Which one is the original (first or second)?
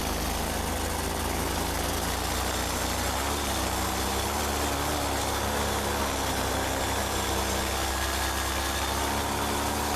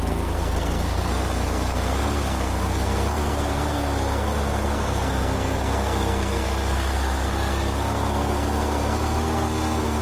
first